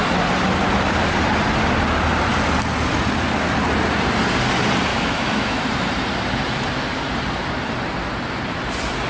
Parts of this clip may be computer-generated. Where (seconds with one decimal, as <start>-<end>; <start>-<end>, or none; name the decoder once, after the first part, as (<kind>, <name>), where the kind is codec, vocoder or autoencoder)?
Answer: 4.9-5.6 (autoencoder, DAC-VAE)